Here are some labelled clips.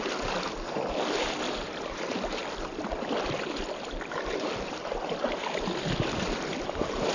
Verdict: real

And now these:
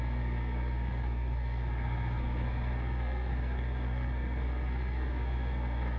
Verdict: fake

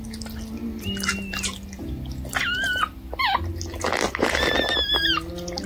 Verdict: real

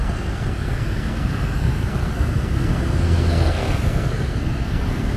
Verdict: fake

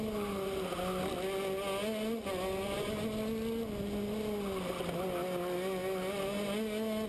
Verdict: real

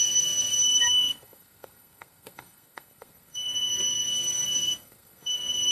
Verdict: fake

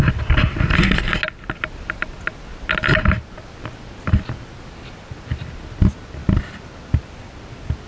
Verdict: real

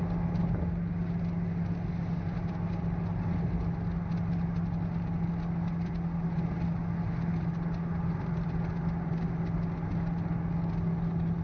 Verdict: real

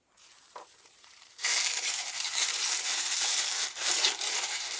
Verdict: fake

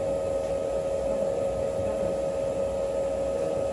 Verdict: real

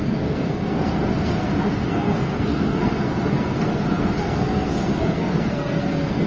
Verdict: fake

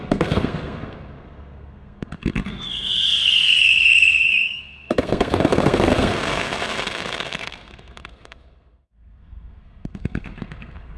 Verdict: fake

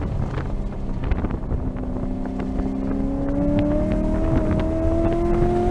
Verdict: real